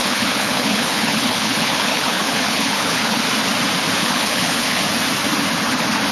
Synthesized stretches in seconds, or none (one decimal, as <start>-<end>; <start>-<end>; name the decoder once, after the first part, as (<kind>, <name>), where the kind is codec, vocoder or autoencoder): 0.0-3.2 (codec, HILCodec); 4.0-4.8